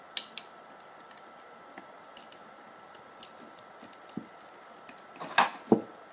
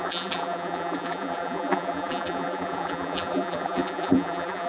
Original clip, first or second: first